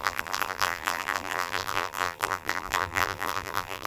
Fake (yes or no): yes